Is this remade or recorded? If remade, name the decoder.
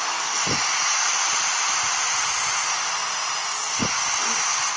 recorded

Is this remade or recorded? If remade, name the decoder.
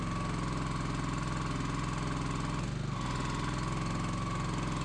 recorded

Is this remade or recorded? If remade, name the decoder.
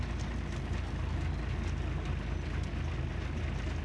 recorded